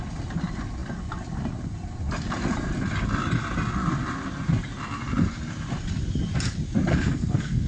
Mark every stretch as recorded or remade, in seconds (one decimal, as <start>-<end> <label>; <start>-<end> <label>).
0.0-6.9 recorded; 6.9-7.7 remade